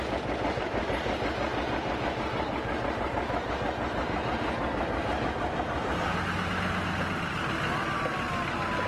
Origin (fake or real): real